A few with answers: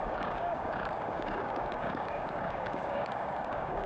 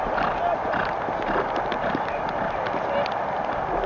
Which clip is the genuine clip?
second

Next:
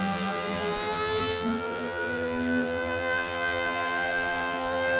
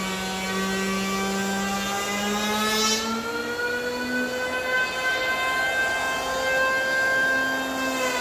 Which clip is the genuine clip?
second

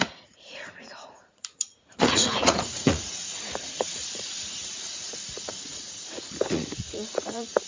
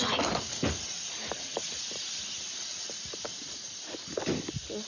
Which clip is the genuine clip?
second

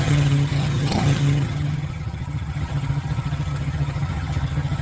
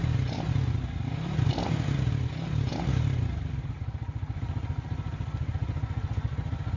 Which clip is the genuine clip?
second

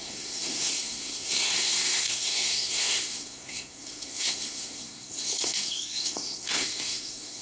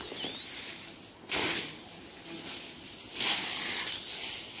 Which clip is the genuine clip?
second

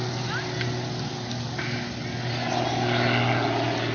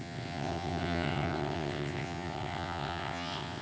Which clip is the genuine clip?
first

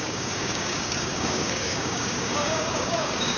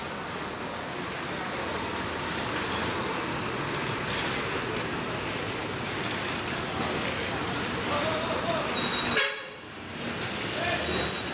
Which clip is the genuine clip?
second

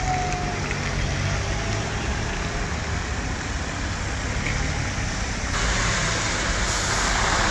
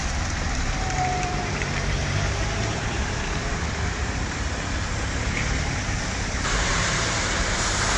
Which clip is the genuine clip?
first